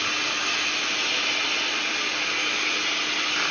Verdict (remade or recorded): recorded